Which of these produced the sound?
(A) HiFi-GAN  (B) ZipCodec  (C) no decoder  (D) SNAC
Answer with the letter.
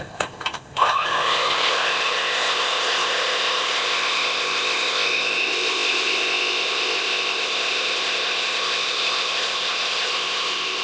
B